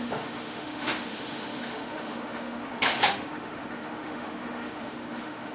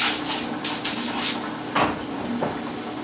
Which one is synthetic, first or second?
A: first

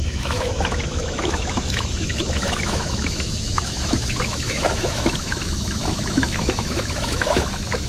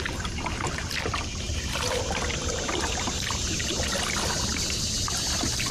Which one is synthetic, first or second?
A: first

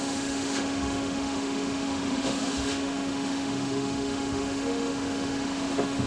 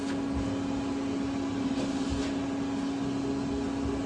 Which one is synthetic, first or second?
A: first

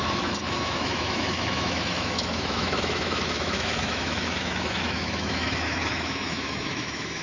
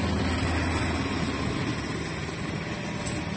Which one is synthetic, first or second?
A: first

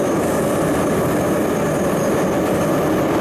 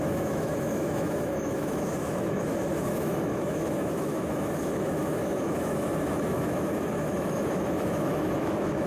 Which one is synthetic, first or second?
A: second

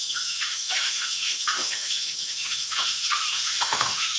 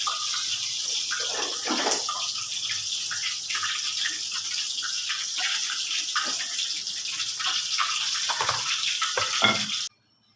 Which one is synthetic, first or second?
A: first